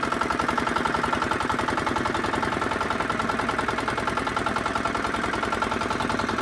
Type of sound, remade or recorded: recorded